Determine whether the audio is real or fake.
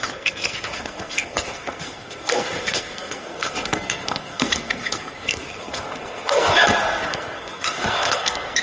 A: fake